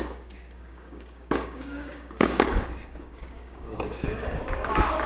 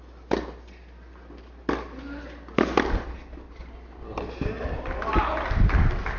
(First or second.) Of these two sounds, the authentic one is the second